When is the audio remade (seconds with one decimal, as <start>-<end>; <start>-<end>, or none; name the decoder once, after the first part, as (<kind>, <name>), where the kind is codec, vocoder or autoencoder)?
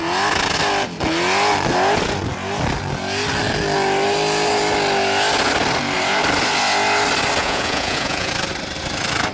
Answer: 7.4-8.3 (vocoder, Vocos)